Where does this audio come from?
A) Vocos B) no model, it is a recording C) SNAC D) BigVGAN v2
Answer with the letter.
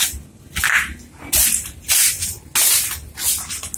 B